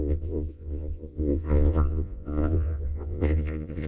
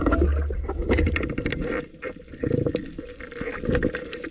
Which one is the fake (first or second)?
first